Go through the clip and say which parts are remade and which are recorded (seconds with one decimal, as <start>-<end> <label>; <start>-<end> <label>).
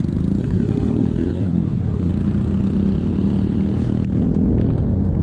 0.0-0.4 recorded; 0.4-2.1 remade; 2.1-5.2 recorded